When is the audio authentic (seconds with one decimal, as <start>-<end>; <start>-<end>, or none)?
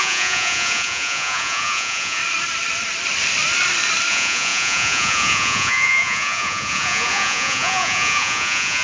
2.2-4.1